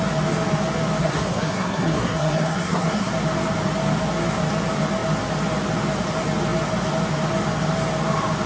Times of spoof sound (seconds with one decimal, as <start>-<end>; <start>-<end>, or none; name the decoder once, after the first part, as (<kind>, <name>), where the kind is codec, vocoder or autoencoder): 1.0-3.1 (codec, SNAC)